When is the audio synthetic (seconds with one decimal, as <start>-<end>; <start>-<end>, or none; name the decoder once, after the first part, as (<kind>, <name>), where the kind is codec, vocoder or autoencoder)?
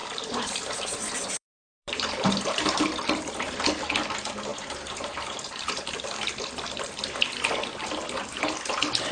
0.0-3.5 (vocoder, BigVGAN v2); 4.5-5.7